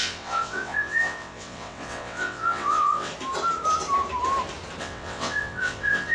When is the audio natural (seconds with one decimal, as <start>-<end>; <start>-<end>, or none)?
3.1-4.8